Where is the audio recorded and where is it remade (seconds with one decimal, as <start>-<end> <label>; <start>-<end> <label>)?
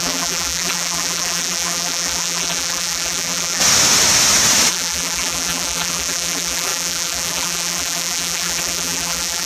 0.0-3.6 remade; 3.6-4.7 recorded; 4.7-9.5 remade